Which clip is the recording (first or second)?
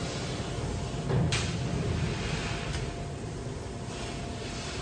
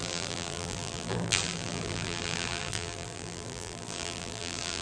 first